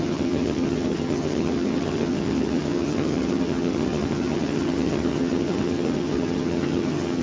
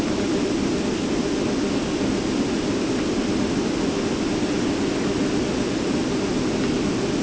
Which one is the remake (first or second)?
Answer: first